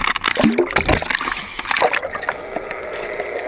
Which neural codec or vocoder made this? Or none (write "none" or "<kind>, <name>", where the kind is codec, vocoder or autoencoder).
none